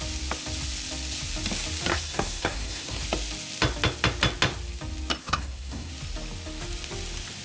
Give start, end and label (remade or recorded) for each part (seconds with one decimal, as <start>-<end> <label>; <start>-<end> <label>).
0.0-1.9 recorded; 1.9-3.0 remade; 3.0-5.2 recorded; 5.2-5.9 remade; 5.9-7.4 recorded